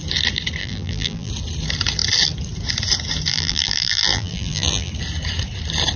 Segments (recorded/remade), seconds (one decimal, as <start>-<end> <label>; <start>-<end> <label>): 0.0-0.6 recorded; 0.6-1.3 remade; 1.3-3.3 recorded; 3.3-4.9 remade; 4.9-6.0 recorded